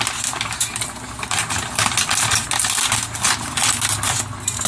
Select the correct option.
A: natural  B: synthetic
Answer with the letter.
A